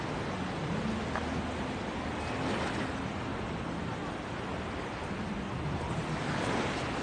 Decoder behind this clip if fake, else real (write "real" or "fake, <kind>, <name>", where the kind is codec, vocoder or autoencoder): real